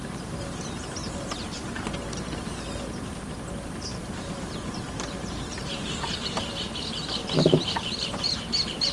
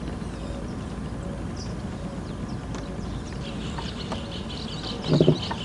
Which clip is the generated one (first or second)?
first